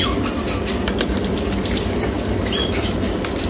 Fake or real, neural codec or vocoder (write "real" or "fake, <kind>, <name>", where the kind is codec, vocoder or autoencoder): fake, vocoder, BigVGAN v2